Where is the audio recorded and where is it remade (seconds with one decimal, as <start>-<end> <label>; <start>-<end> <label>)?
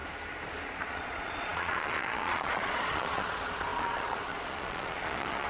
0.0-0.7 recorded; 0.7-5.5 remade